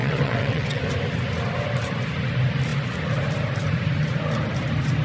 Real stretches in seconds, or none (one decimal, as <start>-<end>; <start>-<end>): 0.8-5.0